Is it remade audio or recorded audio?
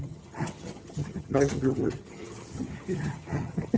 remade